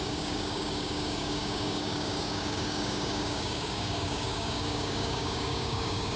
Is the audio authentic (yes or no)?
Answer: no